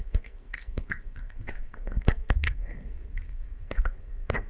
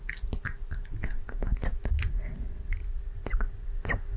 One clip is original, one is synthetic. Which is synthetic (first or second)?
first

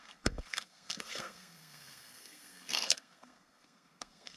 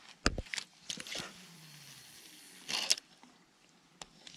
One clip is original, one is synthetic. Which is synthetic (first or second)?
first